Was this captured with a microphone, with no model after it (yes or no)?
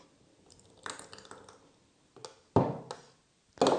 yes